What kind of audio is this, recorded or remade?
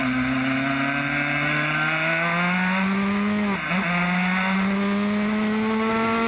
recorded